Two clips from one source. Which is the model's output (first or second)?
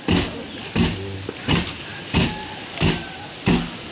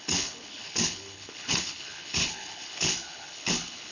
second